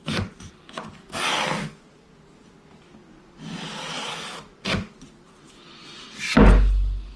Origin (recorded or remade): recorded